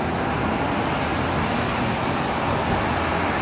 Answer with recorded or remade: recorded